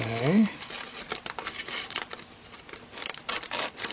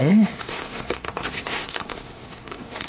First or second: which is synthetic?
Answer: second